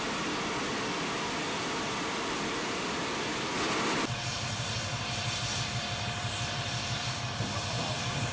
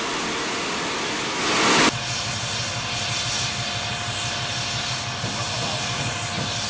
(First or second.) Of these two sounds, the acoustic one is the second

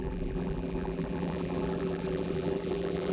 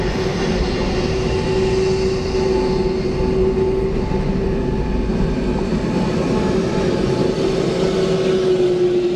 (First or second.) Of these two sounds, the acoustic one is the second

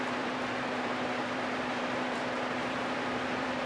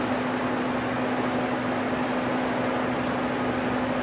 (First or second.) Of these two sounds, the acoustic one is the second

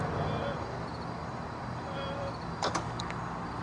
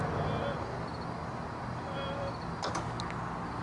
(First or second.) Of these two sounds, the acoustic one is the second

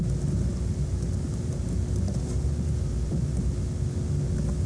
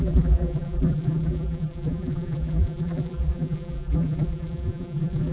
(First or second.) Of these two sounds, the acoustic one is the first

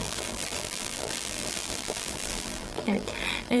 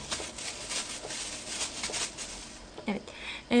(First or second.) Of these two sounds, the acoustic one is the second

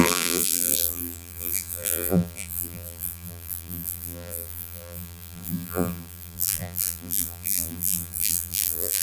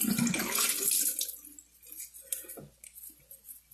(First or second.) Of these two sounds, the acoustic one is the second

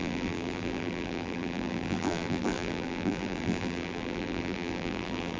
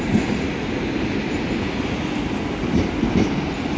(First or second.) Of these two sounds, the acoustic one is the second